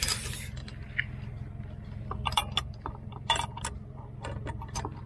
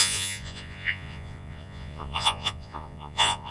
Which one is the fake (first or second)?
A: second